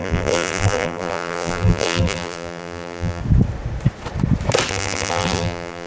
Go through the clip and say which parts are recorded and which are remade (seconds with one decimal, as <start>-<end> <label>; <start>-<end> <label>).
0.0-3.2 remade; 3.2-4.7 recorded; 4.7-5.9 remade